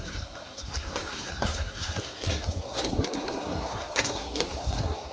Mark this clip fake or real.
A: fake